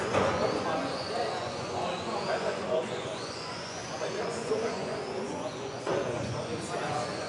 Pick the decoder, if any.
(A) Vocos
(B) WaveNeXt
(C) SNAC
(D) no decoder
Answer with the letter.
A